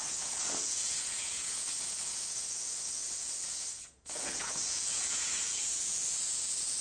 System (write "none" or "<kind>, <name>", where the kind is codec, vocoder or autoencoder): vocoder, Vocos